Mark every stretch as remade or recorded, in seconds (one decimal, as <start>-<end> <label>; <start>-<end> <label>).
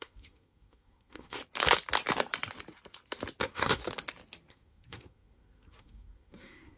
0.0-1.4 remade; 1.4-3.4 recorded; 3.4-3.8 remade; 3.8-4.5 recorded; 4.5-6.8 remade